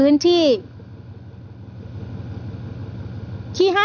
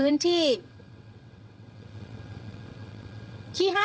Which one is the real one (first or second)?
first